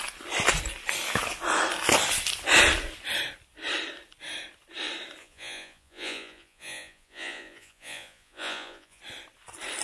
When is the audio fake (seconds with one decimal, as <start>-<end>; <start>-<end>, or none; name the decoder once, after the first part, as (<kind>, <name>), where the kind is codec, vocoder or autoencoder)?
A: 5.2-9.0 (vocoder, Vocos)